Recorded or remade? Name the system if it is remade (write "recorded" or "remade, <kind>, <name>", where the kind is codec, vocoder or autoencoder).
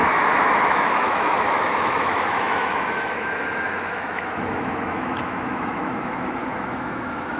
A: remade, autoencoder, DAC-VAE